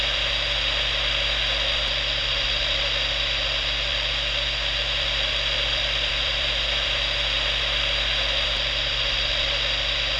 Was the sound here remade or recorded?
remade